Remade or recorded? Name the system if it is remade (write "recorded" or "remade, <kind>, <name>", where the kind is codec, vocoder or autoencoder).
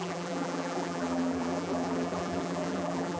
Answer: remade, vocoder, BigVGAN v2